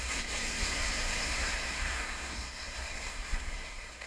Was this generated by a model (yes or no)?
yes